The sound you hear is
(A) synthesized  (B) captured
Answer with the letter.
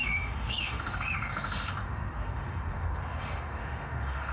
A